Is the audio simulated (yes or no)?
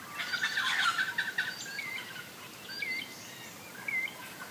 no